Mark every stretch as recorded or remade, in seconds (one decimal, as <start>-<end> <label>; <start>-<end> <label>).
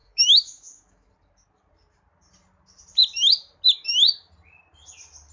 0.0-1.1 remade; 1.1-5.3 recorded